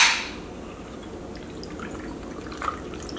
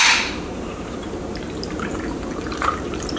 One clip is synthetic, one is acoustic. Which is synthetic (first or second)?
second